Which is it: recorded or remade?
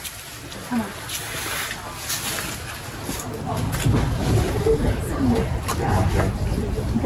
recorded